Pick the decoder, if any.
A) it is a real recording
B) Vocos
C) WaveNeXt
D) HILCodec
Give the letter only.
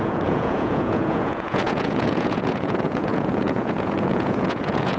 B